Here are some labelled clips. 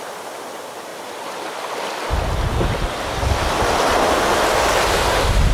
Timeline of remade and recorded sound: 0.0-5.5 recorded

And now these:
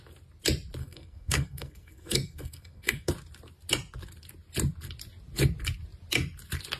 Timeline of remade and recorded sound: 0.0-0.8 recorded; 0.8-3.1 remade; 3.1-6.8 recorded

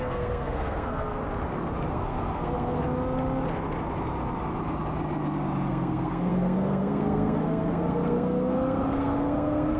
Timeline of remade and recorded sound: 0.0-1.2 remade; 1.2-1.9 recorded; 1.9-2.8 remade; 2.8-5.7 recorded; 5.7-9.8 remade

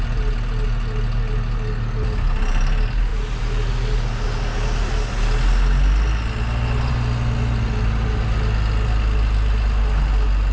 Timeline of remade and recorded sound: 0.0-10.5 recorded

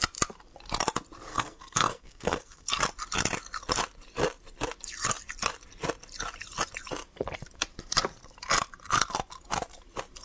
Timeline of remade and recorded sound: 0.0-1.3 recorded; 1.3-2.7 remade; 2.7-10.2 recorded

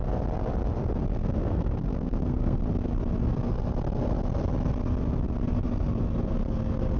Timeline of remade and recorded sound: 0.0-1.1 recorded; 1.1-2.6 remade; 2.6-7.0 recorded

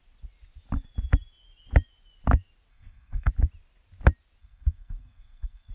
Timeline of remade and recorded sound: 0.0-2.7 recorded; 2.7-3.3 remade; 3.3-4.4 recorded; 4.4-5.7 remade